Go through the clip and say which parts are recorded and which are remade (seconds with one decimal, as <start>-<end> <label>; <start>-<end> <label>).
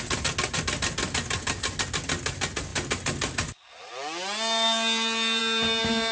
0.0-6.1 recorded